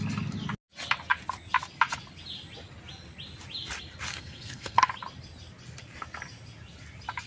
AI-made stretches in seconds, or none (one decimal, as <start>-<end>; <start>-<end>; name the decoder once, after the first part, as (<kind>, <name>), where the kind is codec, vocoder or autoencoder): 4.1-4.9 (codec, SNAC)